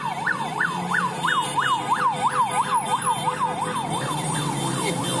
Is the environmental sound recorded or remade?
recorded